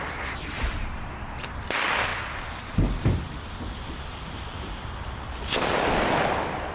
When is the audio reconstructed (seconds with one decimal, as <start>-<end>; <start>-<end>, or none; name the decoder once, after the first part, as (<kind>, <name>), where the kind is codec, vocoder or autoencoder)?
0.0-2.1 (vocoder, BigVGAN v2); 3.0-6.7